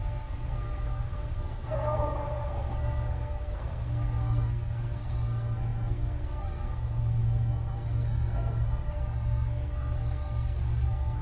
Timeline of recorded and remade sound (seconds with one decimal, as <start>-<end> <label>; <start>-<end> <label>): 0.0-11.2 remade